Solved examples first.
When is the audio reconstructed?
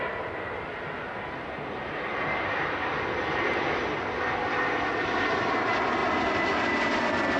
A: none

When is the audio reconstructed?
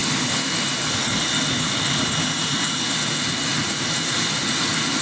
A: none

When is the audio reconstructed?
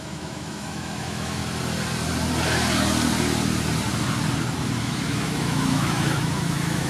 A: 0.0-1.4 (autoencoder, DAC-VAE); 4.8-6.9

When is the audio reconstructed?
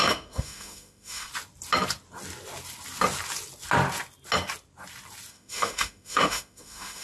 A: 0.0-1.3 (autoencoder, DAC-VAE); 5.3-7.0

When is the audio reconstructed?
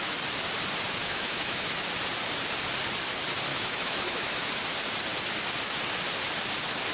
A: 1.0-1.7 (autoencoder, DAC-VAE); 3.5-4.5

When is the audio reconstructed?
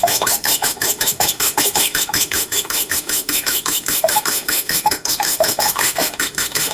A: 0.0-6.7 (autoencoder, DAC-VAE)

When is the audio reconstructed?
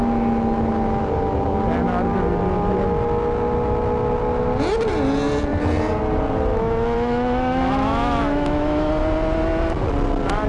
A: 6.5-8.9 (autoencoder, DAC-VAE)